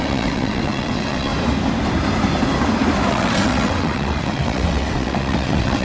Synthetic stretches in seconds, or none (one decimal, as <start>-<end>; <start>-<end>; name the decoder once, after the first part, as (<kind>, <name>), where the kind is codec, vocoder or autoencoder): 0.0-1.3 (vocoder, WaveNeXt); 3.1-5.8